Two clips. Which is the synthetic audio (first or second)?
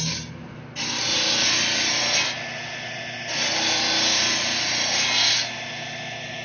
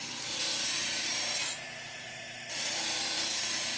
second